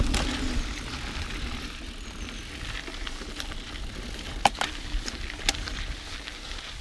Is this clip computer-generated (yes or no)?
no